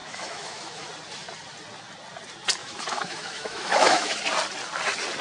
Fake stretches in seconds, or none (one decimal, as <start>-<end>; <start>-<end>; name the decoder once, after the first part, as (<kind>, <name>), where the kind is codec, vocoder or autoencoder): 0.0-0.9 (autoencoder, DAC-VAE); 2.6-4.2